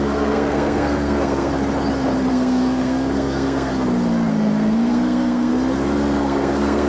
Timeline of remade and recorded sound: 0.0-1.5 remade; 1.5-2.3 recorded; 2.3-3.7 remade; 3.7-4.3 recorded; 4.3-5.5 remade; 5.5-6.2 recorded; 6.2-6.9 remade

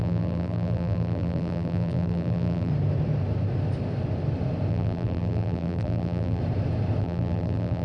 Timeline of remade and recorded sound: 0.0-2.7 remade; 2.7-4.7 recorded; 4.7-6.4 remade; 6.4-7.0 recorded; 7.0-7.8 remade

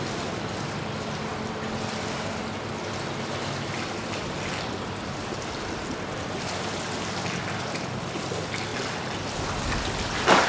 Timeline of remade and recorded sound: 0.0-10.5 recorded

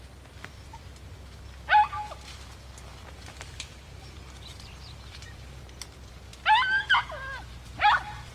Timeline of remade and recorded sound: 0.0-2.9 recorded; 2.9-5.6 remade; 5.6-8.3 recorded